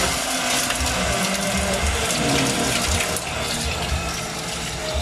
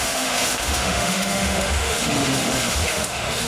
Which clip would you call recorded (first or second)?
first